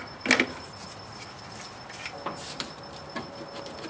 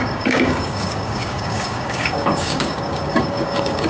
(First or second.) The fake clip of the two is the second